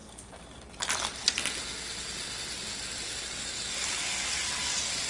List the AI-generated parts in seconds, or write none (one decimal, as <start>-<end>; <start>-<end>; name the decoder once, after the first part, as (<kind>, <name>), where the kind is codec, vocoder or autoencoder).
none